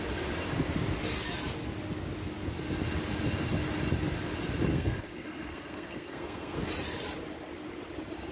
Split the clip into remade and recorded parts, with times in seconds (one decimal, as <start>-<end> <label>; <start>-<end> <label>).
0.0-4.7 recorded; 4.7-6.7 remade; 6.7-8.3 recorded

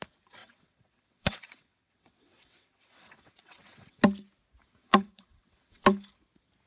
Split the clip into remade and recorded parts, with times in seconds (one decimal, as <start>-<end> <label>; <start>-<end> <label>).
0.0-0.4 recorded; 0.4-4.0 remade; 4.0-4.8 recorded; 4.8-5.8 remade; 5.8-6.7 recorded

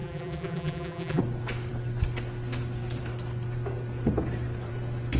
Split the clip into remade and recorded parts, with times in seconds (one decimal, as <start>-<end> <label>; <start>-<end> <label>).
0.0-1.2 remade; 1.2-5.2 recorded

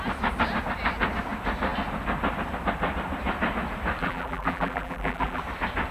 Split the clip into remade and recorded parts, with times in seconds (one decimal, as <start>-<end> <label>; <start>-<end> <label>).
0.0-4.0 recorded; 4.0-5.4 remade; 5.4-5.9 recorded

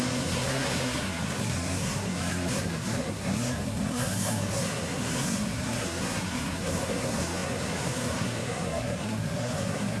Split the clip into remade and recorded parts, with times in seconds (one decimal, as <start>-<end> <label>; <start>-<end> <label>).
0.0-10.0 remade

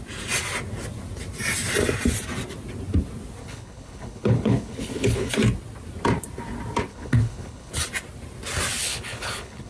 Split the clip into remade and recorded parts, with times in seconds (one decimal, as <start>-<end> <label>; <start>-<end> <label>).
0.0-3.4 recorded; 3.4-5.3 remade; 5.3-6.9 recorded; 6.9-7.7 remade; 7.7-8.8 recorded; 8.8-9.7 remade

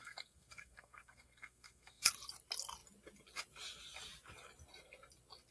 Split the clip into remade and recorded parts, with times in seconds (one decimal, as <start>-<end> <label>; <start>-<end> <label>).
0.0-2.1 remade; 2.1-5.5 recorded

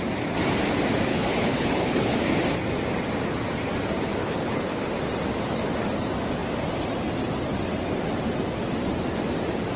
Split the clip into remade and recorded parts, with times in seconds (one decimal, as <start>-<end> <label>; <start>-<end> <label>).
0.0-1.1 recorded; 1.1-2.2 remade; 2.2-4.1 recorded; 4.1-4.9 remade; 4.9-9.8 recorded